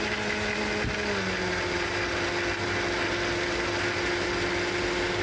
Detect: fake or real real